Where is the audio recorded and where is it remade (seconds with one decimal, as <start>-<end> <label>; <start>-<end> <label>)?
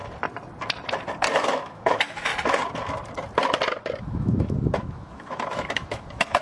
0.0-1.4 recorded; 1.4-2.3 remade; 2.3-4.0 recorded; 4.0-6.4 remade